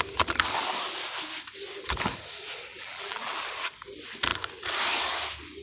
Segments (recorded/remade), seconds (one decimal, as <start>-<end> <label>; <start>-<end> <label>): 0.0-2.7 recorded; 2.7-3.3 remade; 3.3-5.6 recorded

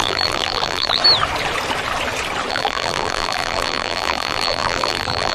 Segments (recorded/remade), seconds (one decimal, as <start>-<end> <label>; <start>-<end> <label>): 0.0-1.0 remade; 1.0-2.5 recorded; 2.5-5.3 remade

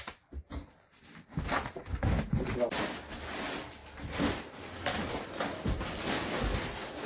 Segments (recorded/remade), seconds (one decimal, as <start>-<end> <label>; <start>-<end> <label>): 0.0-7.1 recorded